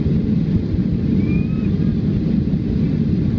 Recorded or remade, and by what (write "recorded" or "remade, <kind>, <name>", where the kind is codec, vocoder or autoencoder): recorded